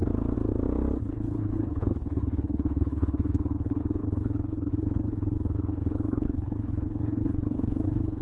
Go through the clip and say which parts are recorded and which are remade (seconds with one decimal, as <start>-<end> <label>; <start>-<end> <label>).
0.0-1.0 recorded; 1.0-8.2 remade

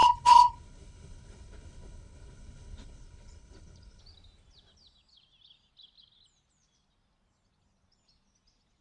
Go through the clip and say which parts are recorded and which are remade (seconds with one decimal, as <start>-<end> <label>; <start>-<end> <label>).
0.0-4.0 remade; 4.0-8.8 recorded

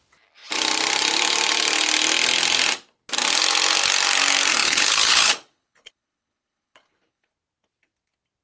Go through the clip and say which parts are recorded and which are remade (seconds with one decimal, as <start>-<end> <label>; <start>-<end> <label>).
0.0-4.6 recorded; 4.6-7.3 remade; 7.3-8.4 recorded

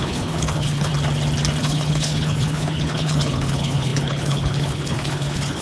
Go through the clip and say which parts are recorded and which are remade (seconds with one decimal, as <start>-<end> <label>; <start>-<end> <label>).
0.0-0.9 remade; 0.9-1.6 recorded; 1.6-5.6 remade

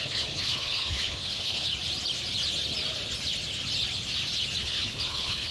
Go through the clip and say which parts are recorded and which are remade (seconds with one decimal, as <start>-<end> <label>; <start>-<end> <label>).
0.0-1.7 remade; 1.7-4.6 recorded; 4.6-5.5 remade